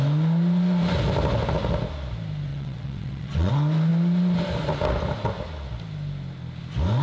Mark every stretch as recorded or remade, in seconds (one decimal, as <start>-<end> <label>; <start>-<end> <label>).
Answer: 0.0-2.5 recorded; 2.5-3.5 remade; 3.5-7.0 recorded